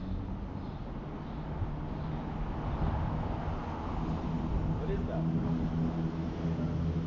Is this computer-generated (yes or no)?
no